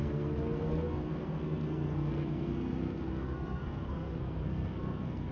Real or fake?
fake